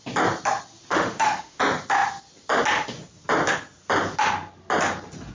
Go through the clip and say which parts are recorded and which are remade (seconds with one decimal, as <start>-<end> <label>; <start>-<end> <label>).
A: 0.0-0.9 recorded; 0.9-1.6 remade; 1.6-5.3 recorded